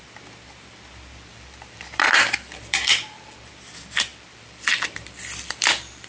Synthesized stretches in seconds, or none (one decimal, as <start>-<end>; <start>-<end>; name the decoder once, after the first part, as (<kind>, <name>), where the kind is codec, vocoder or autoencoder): 1.3-3.5 (vocoder, BigVGAN v2); 4.1-6.1